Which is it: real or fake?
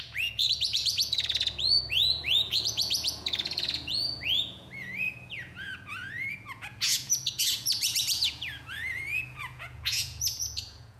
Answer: fake